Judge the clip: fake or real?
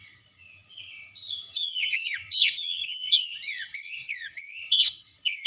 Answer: fake